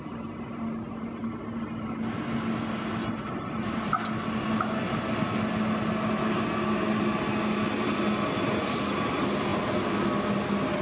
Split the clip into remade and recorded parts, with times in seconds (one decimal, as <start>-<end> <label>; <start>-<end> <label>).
0.0-10.8 recorded